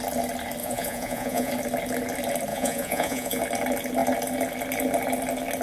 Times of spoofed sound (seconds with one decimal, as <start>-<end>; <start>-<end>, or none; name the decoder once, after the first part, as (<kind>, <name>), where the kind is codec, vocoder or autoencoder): 0.6-1.5 (vocoder, Vocos); 2.5-3.4